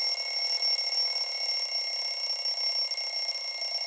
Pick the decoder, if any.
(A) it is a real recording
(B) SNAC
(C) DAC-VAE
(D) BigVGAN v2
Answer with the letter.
A